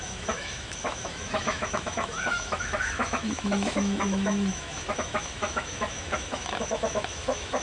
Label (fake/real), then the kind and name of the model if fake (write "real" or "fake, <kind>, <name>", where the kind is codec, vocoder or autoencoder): fake, autoencoder, DAC-VAE